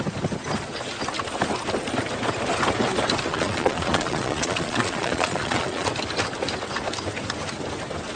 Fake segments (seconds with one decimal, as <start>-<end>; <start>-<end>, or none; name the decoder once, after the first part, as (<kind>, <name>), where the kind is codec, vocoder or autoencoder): 3.3-5.9 (vocoder, Vocos)